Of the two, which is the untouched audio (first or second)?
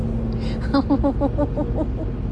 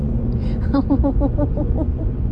first